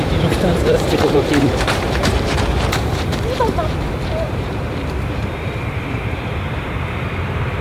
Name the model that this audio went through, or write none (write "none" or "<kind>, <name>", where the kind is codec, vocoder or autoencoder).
vocoder, BigVGAN v2